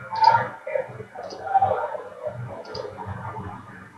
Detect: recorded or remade recorded